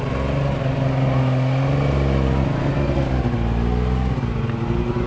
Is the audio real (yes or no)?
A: yes